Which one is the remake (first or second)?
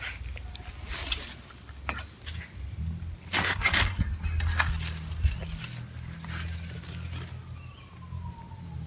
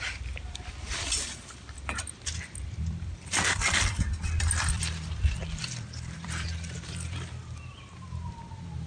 second